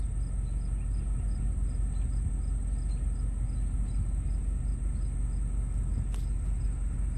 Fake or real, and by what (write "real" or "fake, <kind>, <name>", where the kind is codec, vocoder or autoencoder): real